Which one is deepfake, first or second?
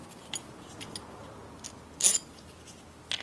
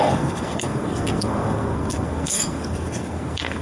second